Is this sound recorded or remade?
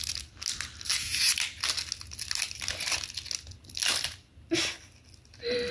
recorded